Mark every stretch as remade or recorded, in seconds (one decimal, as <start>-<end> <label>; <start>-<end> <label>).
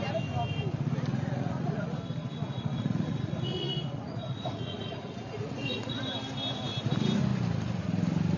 0.0-1.1 recorded; 1.1-2.0 remade; 2.0-2.4 recorded; 2.4-6.0 remade; 6.0-8.4 recorded